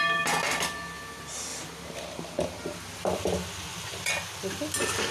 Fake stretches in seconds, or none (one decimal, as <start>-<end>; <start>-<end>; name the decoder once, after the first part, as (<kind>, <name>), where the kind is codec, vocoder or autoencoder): none